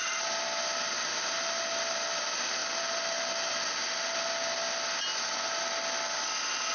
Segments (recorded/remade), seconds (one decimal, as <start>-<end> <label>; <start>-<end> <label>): 0.0-6.7 recorded